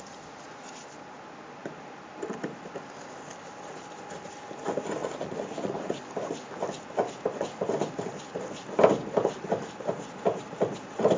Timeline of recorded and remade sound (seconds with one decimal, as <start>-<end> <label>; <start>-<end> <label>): 0.0-5.0 recorded; 5.0-6.0 remade; 6.0-11.2 recorded